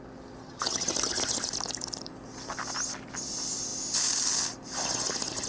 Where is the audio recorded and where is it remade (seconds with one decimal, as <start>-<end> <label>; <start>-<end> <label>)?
0.0-0.4 recorded; 0.4-0.9 remade; 0.9-5.5 recorded